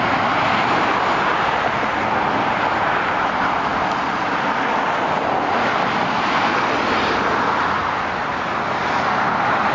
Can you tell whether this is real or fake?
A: real